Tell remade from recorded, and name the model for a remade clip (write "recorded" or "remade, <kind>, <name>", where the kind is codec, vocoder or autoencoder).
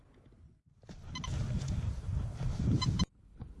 recorded